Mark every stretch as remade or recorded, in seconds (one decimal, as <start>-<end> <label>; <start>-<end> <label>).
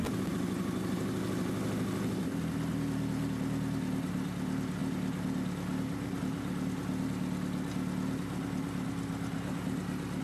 0.0-10.2 recorded